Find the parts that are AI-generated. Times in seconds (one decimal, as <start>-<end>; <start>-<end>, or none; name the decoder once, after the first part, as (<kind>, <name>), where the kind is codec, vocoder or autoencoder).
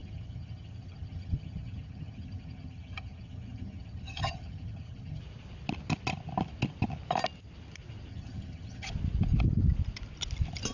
0.0-5.2 (vocoder, HiFi-GAN); 8.1-8.9